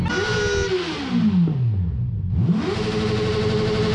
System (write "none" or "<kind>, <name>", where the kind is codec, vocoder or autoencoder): none